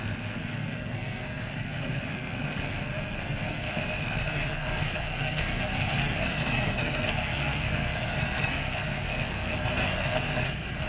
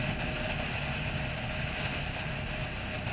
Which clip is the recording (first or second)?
second